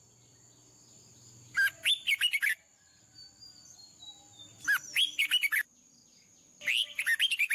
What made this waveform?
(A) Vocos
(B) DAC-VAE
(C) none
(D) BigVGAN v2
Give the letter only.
C